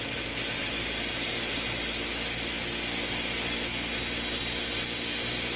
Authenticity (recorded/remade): recorded